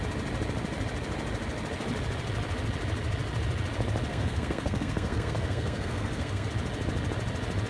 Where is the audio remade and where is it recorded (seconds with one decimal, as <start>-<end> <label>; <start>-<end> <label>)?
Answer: 0.0-4.1 recorded; 4.1-6.5 remade; 6.5-7.7 recorded